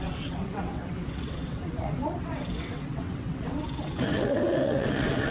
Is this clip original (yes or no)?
no